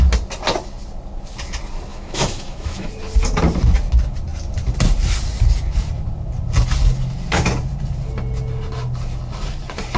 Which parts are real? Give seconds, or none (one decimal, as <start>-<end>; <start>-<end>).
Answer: 0.0-1.9; 2.9-10.0